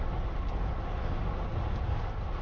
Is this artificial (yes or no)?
no